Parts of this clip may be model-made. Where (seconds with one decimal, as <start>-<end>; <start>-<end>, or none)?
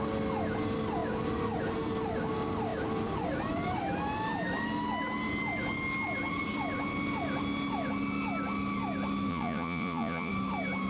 9.3-10.3